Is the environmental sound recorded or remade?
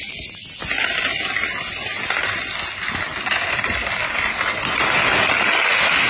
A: recorded